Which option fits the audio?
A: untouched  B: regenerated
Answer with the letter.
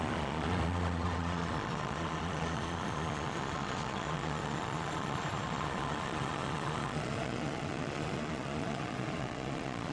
B